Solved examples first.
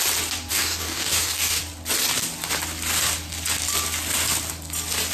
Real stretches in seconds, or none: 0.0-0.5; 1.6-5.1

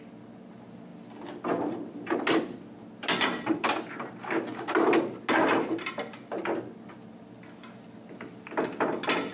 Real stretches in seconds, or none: 0.0-9.3

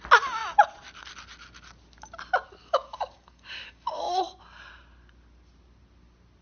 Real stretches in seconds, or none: 0.0-2.6; 4.2-6.4

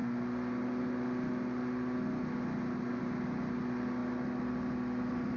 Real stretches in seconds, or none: 0.0-5.4

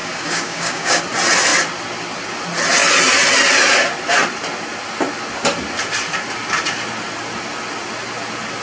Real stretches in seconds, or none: 1.0-8.6

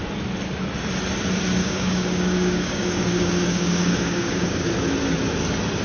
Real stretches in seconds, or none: 0.0-1.6; 4.7-5.8

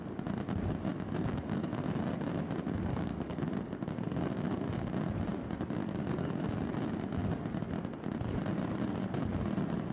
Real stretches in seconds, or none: 0.0-0.9; 1.8-2.9; 4.9-5.8; 6.4-9.9

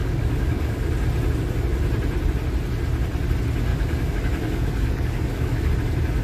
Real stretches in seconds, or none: 0.9-3.7; 5.7-6.2